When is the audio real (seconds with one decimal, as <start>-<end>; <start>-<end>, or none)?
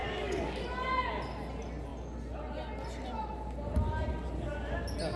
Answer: 0.6-5.2